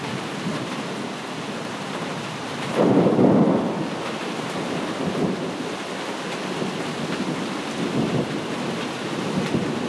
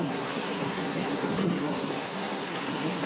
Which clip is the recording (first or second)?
first